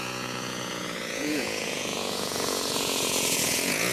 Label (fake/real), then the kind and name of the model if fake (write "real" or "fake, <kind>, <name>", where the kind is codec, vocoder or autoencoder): fake, vocoder, Vocos